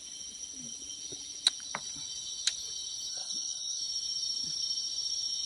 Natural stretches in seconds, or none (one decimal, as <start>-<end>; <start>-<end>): 0.0-3.1; 3.8-5.5